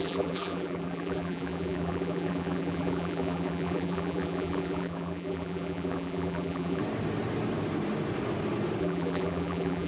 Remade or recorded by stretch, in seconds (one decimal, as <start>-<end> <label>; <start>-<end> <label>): 0.0-6.8 remade; 6.8-8.8 recorded; 8.8-9.9 remade